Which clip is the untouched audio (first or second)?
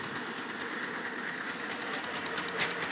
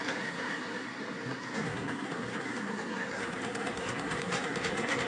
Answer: first